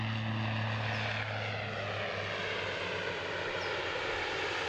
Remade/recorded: recorded